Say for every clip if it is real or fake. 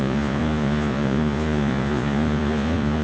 fake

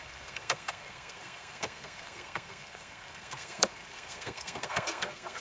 fake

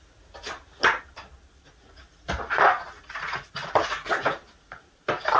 real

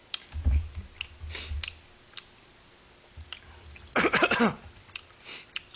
real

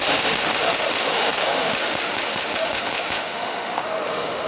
fake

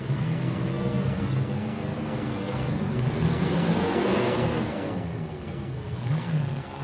fake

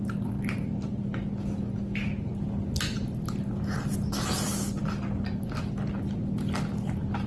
real